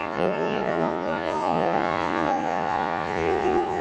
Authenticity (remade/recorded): remade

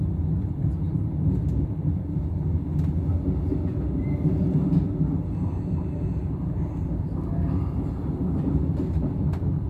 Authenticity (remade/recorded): recorded